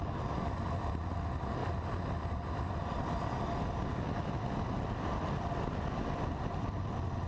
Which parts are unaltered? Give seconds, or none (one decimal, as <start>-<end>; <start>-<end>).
0.0-7.3

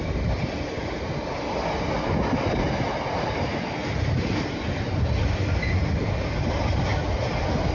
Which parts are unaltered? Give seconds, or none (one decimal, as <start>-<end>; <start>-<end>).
0.0-7.7

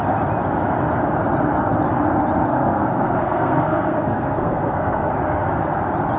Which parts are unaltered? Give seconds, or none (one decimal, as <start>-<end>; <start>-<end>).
0.0-2.5; 5.1-6.2

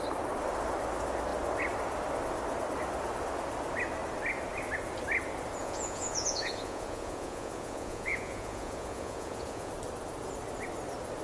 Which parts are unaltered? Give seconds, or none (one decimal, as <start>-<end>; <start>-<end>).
0.0-5.6; 9.7-11.2

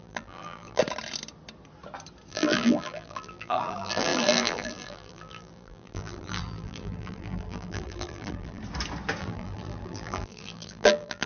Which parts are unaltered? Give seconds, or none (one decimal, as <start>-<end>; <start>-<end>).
0.8-2.3; 8.6-9.2

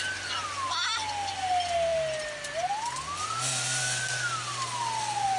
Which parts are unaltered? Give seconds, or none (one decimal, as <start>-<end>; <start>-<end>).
0.0-5.4

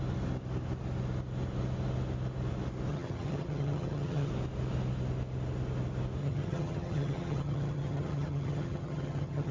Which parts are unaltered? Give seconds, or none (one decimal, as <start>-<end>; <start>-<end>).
0.0-2.9; 4.3-6.2